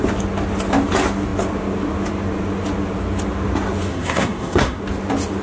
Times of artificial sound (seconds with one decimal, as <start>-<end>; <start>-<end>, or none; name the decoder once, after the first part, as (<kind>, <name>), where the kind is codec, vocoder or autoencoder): 3.9-4.8 (codec, SNAC)